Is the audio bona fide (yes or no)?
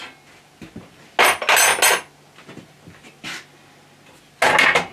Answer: yes